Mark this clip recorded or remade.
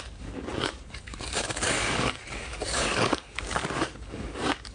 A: remade